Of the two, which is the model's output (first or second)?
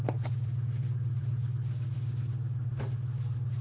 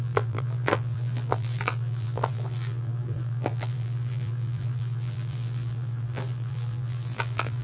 second